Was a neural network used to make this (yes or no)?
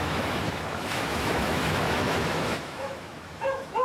yes